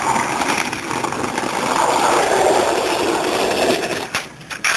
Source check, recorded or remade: recorded